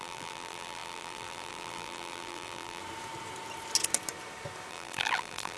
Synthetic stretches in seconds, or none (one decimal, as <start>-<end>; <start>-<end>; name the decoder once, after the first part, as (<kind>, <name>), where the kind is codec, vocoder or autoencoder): 0.0-2.8 (vocoder, BigVGAN v2); 4.7-5.6